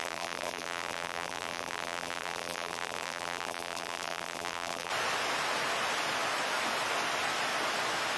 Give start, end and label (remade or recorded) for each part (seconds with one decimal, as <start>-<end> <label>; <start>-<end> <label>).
0.0-4.9 remade; 4.9-8.2 recorded